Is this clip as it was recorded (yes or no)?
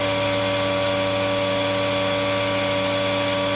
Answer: yes